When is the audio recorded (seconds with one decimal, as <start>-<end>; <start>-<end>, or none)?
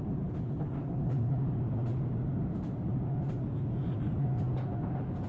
0.0-1.0; 4.2-5.3